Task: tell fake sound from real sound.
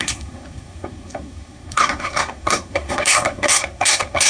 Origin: fake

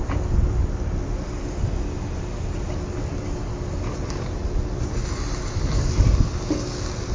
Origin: real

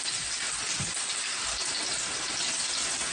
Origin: real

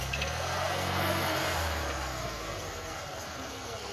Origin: fake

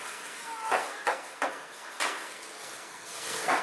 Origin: fake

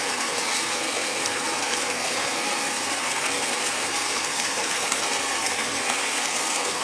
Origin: fake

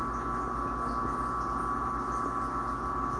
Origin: real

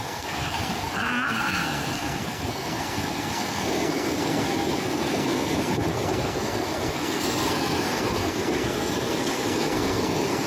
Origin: fake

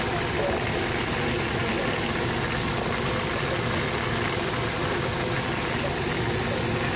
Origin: real